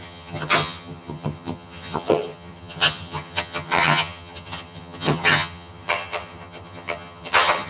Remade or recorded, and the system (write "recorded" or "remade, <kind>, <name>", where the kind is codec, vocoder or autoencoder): remade, vocoder, HiFi-GAN